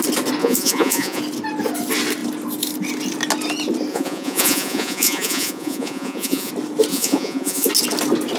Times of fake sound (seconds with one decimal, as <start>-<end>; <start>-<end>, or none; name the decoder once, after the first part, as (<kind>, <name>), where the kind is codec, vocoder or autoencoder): 0.4-1.2 (vocoder, Vocos); 3.9-6.5; 6.9-7.7